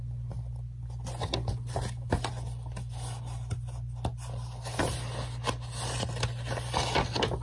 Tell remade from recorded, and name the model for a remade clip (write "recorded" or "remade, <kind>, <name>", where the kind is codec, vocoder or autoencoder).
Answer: recorded